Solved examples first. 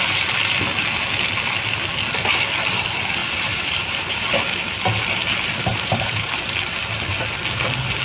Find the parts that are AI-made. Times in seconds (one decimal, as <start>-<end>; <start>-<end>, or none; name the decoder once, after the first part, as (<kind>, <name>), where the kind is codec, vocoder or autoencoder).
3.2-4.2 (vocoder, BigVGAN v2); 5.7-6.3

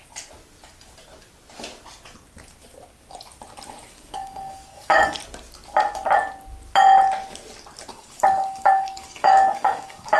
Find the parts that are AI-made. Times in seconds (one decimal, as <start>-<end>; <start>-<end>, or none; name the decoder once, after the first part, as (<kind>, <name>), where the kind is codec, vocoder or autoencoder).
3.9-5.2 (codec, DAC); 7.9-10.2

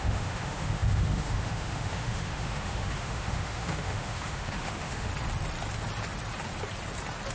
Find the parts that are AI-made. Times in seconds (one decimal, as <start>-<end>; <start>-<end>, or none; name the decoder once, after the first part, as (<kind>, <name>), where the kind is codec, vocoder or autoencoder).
0.0-5.1 (autoencoder, DAC-VAE)

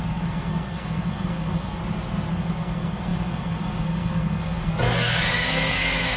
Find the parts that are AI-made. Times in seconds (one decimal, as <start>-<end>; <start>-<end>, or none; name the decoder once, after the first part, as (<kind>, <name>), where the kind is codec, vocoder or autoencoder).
0.0-1.8 (codec, SNAC); 2.3-6.2

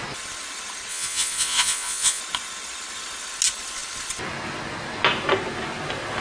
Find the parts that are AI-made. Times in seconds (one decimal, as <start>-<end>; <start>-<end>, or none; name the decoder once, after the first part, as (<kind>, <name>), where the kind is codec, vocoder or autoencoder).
0.9-2.2 (vocoder, Vocos)

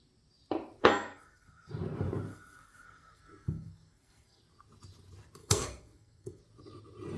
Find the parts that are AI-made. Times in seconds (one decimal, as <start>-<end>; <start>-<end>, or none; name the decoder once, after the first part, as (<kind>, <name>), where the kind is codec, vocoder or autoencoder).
0.8-1.7 (codec, SNAC); 2.3-4.4; 5.4-6.4

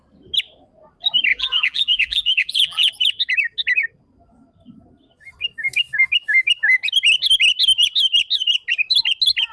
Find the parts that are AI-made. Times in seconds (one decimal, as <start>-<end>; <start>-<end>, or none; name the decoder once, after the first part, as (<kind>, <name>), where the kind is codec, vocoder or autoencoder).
1.3-2.9 (vocoder, BigVGAN v2)